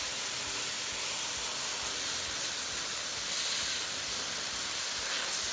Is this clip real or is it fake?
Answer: real